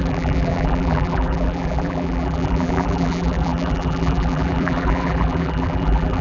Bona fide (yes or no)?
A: no